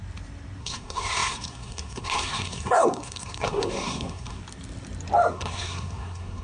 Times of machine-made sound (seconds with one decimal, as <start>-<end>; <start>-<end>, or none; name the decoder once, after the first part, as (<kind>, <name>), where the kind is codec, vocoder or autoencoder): 0.6-4.4 (codec, SNAC); 5.3-6.4